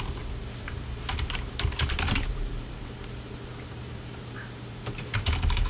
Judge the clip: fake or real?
fake